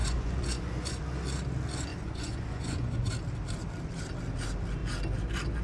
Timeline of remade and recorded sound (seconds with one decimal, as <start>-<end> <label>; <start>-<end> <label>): 0.0-1.0 remade; 1.0-1.9 recorded; 1.9-3.1 remade; 3.1-5.6 recorded